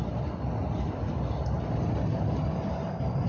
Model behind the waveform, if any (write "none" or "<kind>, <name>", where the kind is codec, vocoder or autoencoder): none